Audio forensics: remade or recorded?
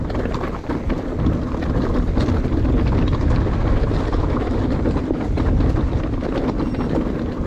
recorded